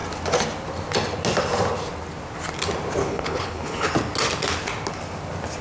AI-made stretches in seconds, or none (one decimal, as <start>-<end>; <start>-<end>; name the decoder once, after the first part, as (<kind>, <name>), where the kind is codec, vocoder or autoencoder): 3.0-3.9 (codec, HILCodec)